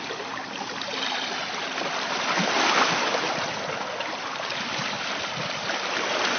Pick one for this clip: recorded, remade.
recorded